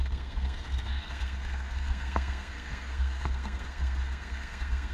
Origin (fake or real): fake